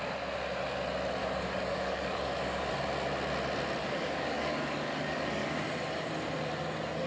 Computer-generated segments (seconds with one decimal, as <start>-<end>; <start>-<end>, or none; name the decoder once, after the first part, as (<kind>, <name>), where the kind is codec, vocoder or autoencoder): 1.2-2.7 (codec, DAC); 3.8-5.6